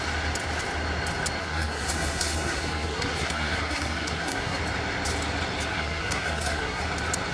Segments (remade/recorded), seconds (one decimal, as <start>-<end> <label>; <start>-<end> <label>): 0.0-1.4 recorded; 1.4-4.6 remade; 4.6-5.7 recorded; 5.7-6.8 remade; 6.8-7.3 recorded